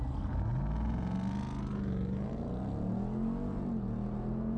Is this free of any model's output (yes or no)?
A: yes